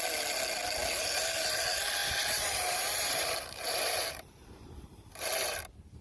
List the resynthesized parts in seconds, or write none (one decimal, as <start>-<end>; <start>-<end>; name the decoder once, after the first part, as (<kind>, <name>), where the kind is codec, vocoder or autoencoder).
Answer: 2.0-5.6 (vocoder, BigVGAN v2)